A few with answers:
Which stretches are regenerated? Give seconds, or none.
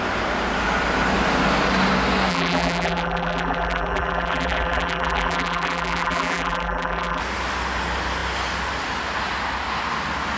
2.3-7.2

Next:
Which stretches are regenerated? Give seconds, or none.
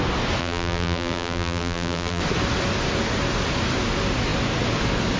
0.4-2.2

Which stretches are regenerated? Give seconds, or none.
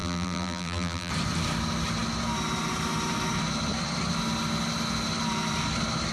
0.0-1.1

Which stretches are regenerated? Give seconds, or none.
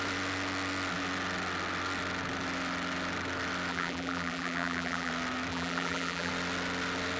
3.7-5.1; 5.5-6.3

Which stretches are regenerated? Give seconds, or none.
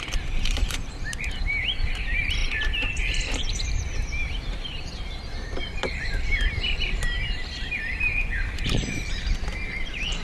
0.0-10.2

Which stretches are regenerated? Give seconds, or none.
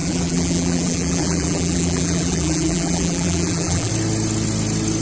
0.0-3.9